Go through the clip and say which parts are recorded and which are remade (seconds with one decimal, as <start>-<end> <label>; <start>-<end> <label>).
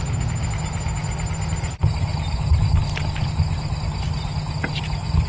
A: 0.0-5.3 recorded